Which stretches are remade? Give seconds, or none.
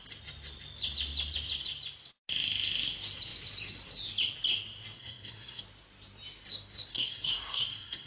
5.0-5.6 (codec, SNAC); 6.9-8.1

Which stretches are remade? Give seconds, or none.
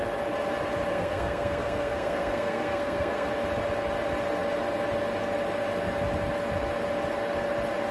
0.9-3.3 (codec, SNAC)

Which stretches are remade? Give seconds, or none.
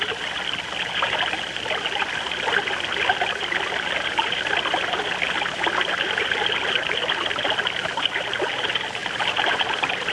none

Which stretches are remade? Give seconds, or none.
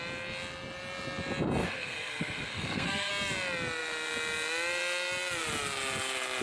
1.6-3.1 (codec, SNAC)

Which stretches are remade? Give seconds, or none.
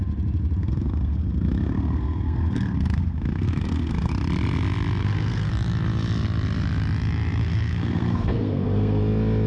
0.6-4.1 (codec, SNAC); 5.0-5.5; 7.4-9.0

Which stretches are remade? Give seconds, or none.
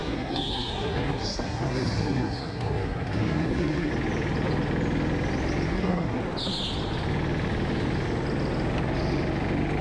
0.0-3.9 (codec, SNAC); 5.7-6.2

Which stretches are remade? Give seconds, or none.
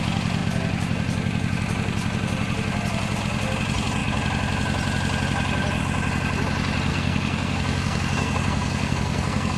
6.9-9.6 (codec, SNAC)